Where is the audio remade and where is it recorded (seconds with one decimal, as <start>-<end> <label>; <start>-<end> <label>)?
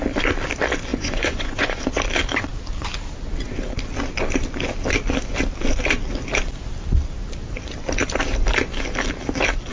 0.0-0.9 recorded; 0.9-1.8 remade; 1.8-9.7 recorded